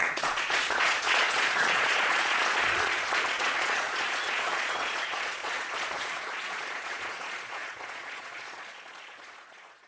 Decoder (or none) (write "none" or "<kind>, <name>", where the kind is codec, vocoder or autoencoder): vocoder, Vocos